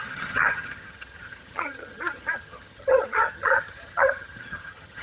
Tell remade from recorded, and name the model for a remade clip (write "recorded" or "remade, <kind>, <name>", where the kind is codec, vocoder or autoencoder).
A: remade, vocoder, HiFi-GAN